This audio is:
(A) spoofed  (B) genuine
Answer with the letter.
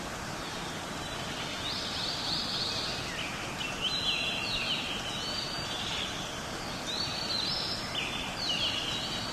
B